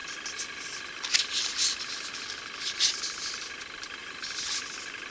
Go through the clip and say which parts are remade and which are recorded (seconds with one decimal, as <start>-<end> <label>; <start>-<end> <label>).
0.0-4.0 recorded; 4.0-4.6 remade; 4.6-5.1 recorded